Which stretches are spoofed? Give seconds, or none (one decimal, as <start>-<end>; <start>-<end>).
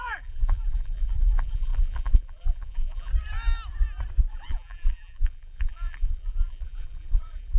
0.0-3.1; 4.3-7.6